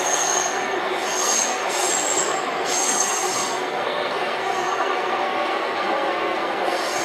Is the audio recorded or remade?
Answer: remade